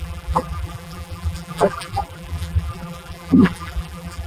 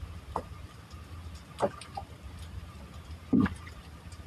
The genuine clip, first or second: second